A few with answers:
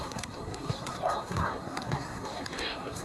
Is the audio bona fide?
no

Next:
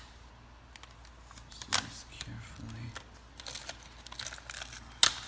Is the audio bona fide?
yes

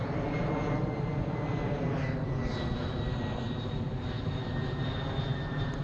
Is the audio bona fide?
yes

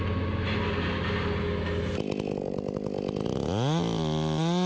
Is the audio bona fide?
yes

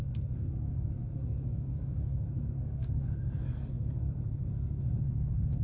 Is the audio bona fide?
no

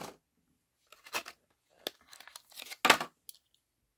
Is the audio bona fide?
yes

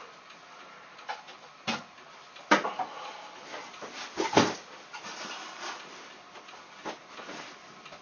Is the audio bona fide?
yes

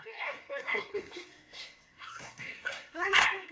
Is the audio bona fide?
no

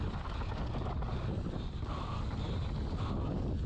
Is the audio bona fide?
yes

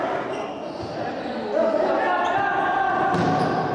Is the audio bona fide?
yes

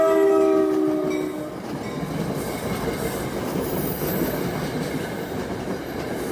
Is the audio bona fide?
yes